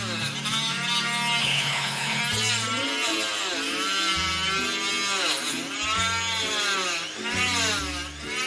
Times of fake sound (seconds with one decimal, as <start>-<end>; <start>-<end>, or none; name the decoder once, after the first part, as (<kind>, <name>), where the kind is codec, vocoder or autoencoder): 1.4-2.2 (codec, HILCodec)